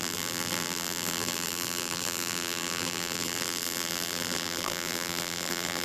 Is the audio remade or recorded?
remade